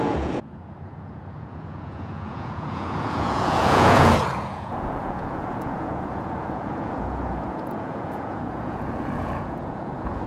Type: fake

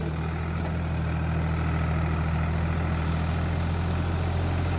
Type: real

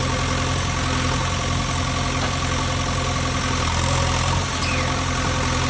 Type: real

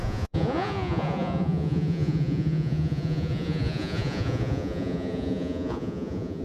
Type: fake